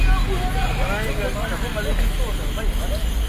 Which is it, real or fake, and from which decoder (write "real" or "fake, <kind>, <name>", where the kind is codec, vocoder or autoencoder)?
real